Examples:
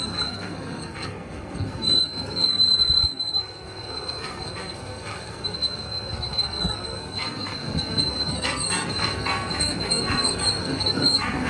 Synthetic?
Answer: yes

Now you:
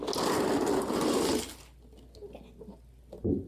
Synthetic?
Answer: no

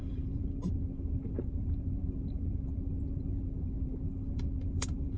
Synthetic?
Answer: yes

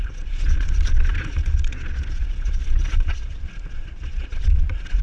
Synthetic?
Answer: yes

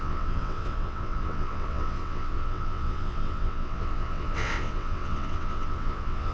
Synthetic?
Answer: yes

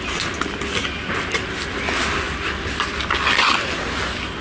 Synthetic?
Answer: no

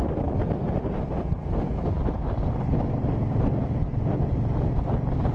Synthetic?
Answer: no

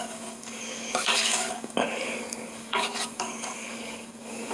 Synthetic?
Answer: yes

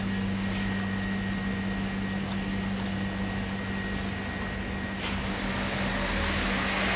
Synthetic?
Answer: no